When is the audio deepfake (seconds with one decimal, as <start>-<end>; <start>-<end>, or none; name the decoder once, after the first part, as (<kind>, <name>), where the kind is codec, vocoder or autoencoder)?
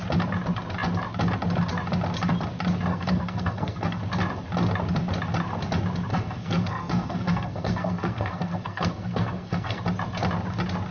2.9-4.0 (codec, SNAC); 6.1-9.8